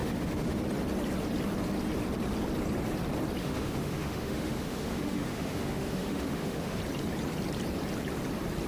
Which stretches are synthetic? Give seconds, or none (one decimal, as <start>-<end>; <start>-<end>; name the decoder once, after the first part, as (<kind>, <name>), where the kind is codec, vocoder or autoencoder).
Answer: 0.0-0.6 (autoencoder, DAC-VAE); 3.4-6.8